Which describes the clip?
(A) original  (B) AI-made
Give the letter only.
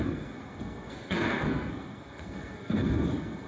B